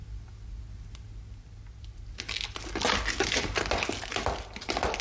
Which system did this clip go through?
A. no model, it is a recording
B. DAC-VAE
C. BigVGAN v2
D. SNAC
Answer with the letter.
A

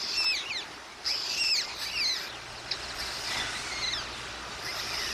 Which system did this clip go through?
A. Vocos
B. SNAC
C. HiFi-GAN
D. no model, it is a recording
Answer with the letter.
D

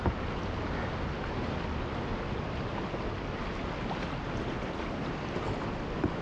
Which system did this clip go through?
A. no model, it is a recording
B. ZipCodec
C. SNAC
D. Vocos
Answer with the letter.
A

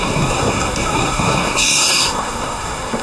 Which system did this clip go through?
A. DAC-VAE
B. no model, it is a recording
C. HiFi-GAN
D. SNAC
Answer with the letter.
D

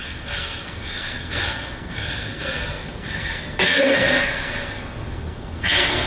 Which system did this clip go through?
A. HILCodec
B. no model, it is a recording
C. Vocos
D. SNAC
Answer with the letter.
D